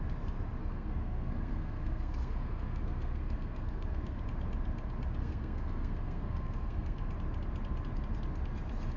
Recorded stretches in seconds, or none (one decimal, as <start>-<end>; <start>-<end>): 0.0-0.6; 4.2-5.2; 7.1-9.0